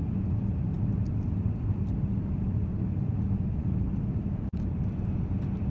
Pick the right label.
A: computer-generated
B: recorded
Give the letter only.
B